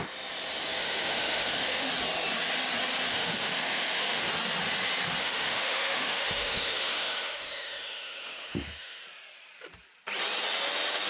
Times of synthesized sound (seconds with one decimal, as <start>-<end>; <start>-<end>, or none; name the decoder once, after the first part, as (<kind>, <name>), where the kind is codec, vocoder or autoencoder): 0.8-1.9 (autoencoder, DAC-VAE); 3.1-4.3; 5.2-9.0